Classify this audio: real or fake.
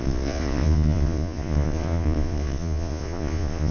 fake